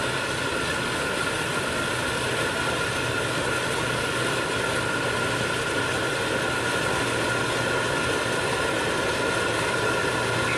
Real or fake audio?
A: real